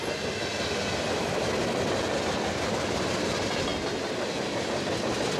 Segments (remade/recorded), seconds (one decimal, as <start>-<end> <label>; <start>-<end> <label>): 0.0-5.4 recorded